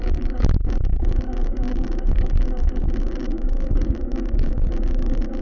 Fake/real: fake